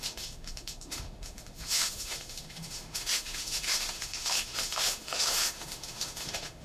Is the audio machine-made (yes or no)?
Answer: yes